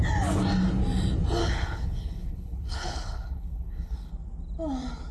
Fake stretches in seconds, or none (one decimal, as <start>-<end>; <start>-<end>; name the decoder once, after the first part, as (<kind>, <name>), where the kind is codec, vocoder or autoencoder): 1.4-4.1 (codec, HILCodec)